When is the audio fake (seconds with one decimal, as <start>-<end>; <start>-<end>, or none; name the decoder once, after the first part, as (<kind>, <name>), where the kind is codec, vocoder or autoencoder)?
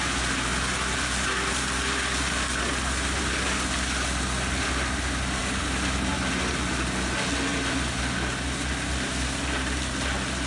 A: none